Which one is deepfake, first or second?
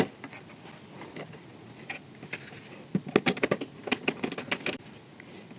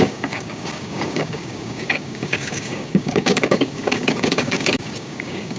second